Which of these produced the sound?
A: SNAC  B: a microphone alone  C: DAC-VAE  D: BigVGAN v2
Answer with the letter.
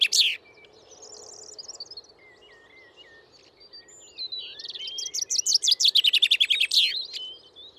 B